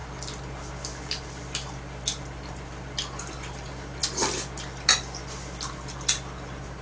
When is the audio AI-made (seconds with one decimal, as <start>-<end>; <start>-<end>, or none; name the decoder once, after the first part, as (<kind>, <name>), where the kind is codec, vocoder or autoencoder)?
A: 1.4-4.0 (vocoder, BigVGAN v2); 5.7-6.8